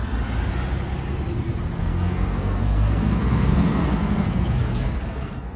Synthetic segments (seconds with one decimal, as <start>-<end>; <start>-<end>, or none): 1.8-5.6